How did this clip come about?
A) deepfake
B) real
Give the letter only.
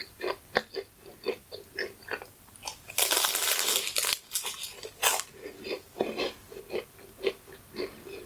B